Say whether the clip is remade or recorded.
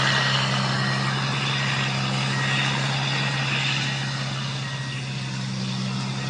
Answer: recorded